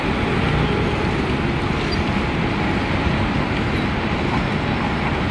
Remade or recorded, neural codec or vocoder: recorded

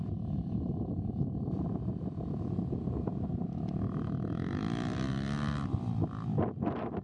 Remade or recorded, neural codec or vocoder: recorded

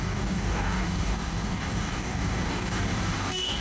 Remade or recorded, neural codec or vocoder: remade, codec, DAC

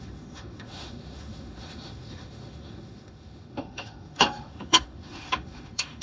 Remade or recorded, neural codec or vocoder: remade, autoencoder, DAC-VAE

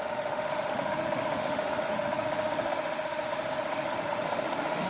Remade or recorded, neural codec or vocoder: remade, autoencoder, DAC-VAE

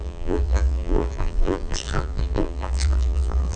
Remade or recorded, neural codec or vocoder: remade, vocoder, BigVGAN v2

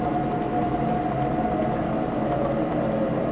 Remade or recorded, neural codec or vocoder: recorded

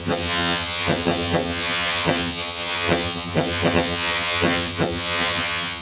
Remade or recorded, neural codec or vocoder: remade, vocoder, HiFi-GAN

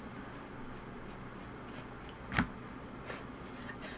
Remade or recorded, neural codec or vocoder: recorded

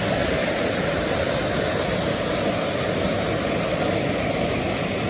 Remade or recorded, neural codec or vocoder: recorded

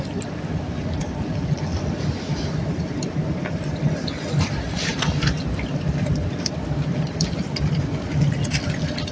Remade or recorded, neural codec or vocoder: recorded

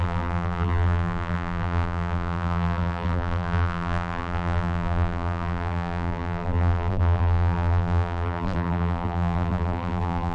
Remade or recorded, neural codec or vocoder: remade, vocoder, BigVGAN v2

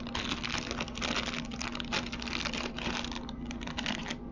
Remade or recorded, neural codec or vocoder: recorded